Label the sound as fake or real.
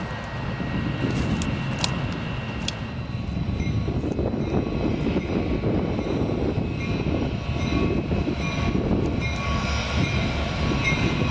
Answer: real